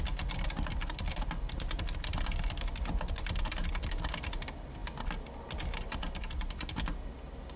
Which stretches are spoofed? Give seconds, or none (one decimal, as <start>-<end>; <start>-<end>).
none